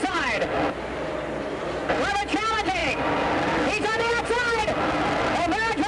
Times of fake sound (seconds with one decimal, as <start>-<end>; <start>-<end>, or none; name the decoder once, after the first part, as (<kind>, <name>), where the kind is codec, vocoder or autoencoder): none